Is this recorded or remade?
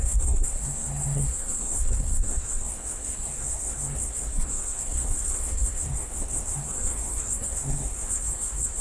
remade